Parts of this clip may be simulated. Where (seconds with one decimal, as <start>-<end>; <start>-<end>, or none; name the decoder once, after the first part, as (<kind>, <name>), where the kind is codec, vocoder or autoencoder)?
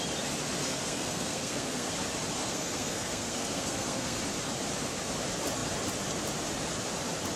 0.6-1.9 (codec, SNAC); 2.4-4.2